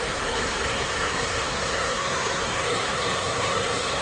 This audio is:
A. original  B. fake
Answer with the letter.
B